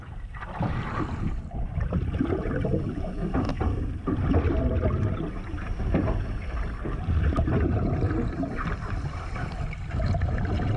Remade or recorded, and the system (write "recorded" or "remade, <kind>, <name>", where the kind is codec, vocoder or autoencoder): remade, vocoder, BigVGAN v2